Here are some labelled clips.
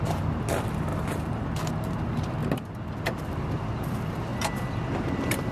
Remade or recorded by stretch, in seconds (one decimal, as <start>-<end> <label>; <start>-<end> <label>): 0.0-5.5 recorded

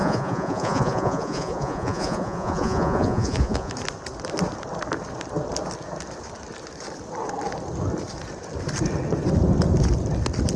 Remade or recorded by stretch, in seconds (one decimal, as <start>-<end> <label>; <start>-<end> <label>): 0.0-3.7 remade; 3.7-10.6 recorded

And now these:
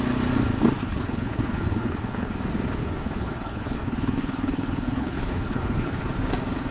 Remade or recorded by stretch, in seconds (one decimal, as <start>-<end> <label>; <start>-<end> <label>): 0.0-0.8 recorded; 0.8-2.3 remade; 2.3-2.8 recorded; 2.8-6.0 remade; 6.0-6.7 recorded

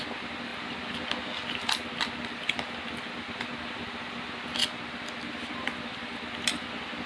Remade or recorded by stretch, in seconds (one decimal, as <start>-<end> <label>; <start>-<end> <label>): 0.0-7.1 recorded

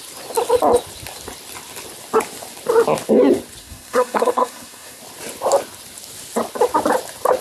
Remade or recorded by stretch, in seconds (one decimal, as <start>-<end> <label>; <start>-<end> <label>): 0.0-3.6 recorded; 3.6-5.0 remade; 5.0-7.4 recorded

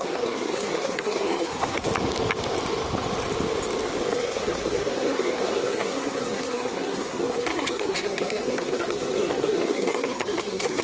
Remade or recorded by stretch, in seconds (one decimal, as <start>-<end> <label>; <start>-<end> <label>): 0.0-1.9 remade; 1.9-4.1 recorded; 4.1-10.8 remade